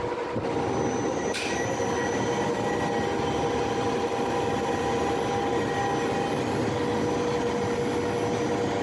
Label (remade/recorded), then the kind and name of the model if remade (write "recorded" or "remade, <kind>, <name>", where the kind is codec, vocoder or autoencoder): recorded